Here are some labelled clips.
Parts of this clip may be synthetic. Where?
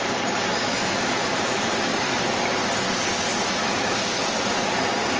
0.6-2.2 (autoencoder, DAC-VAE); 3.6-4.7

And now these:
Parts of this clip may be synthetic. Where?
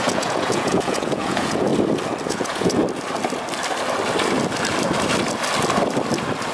0.0-1.7 (vocoder, Vocos); 2.3-2.8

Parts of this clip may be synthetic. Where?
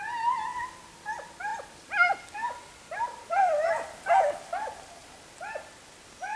none